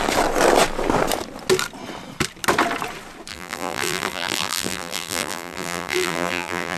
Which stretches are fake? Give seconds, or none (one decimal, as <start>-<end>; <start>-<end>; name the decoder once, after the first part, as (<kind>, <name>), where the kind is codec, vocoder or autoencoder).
3.3-6.8 (vocoder, BigVGAN v2)